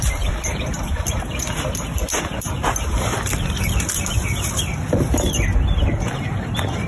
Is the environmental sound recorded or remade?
remade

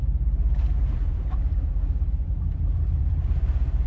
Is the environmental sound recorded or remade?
remade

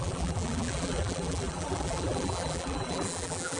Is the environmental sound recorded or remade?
remade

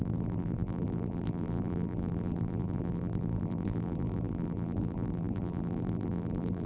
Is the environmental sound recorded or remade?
remade